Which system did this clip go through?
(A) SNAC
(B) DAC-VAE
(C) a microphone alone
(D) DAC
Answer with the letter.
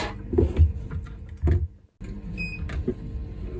C